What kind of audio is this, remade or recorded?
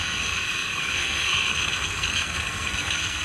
remade